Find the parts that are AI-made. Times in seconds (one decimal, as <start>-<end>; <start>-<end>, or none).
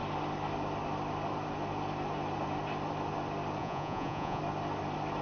3.6-4.4